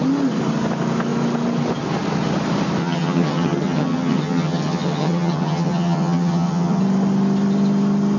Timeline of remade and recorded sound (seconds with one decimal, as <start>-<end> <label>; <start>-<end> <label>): 0.0-2.8 recorded; 2.8-6.8 remade; 6.8-8.2 recorded

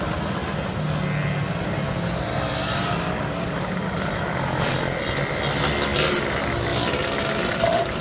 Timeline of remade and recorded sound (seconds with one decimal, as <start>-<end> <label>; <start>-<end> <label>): 0.0-8.0 recorded

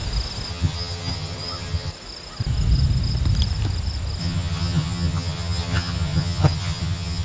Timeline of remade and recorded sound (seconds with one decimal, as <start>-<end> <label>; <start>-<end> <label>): 0.0-0.5 recorded; 0.5-1.9 remade; 1.9-4.2 recorded; 4.2-7.2 remade

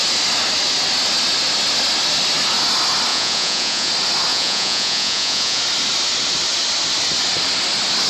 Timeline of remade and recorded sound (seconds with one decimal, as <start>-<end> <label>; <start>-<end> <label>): 0.0-3.1 recorded; 3.1-3.9 remade; 3.9-4.3 recorded; 4.3-5.6 remade; 5.6-8.1 recorded

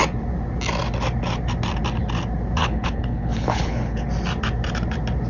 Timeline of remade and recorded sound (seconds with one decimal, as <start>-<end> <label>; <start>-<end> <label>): 0.0-2.6 recorded; 2.6-4.1 remade; 4.1-5.3 recorded